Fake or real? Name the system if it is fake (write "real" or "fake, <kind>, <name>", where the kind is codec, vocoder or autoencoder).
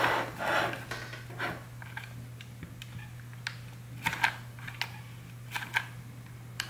real